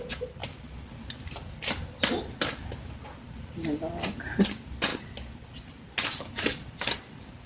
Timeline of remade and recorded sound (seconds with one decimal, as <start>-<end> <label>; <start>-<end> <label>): 0.0-0.4 remade; 0.4-4.4 recorded; 4.4-4.9 remade; 4.9-6.3 recorded; 6.3-7.5 remade

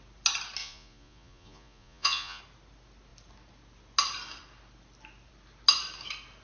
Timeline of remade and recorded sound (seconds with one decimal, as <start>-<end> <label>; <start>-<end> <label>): 0.0-0.6 recorded; 0.6-2.4 remade; 2.4-6.4 recorded